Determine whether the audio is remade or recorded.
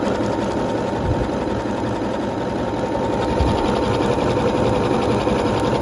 recorded